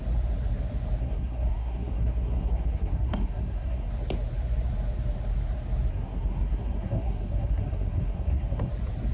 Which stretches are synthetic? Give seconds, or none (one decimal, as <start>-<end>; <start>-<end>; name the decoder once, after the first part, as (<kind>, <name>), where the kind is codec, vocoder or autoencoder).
1.0-3.9 (codec, SNAC); 5.9-8.7